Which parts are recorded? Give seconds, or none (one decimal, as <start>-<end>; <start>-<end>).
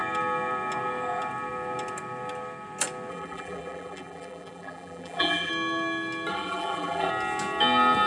0.0-3.1; 5.5-6.3; 7.1-8.1